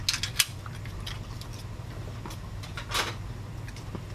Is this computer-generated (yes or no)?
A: no